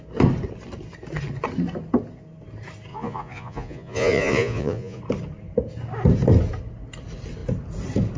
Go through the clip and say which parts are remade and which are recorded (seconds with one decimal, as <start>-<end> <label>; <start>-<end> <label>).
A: 0.0-2.9 recorded; 2.9-5.0 remade; 5.0-8.2 recorded